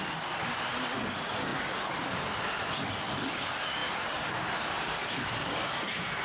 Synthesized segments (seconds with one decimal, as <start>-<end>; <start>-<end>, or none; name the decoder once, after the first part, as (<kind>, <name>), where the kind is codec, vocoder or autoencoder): none